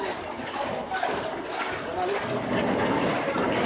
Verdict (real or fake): real